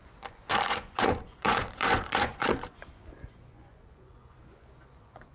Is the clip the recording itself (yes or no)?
no